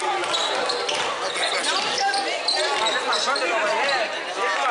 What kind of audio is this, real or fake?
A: real